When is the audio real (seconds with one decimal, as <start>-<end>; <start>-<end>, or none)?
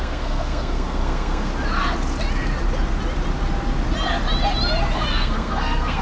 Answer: 1.5-5.1